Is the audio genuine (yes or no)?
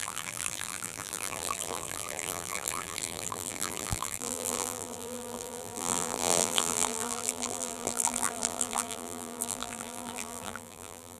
no